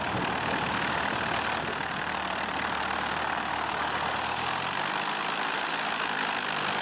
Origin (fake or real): real